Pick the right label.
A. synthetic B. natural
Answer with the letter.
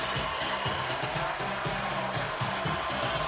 B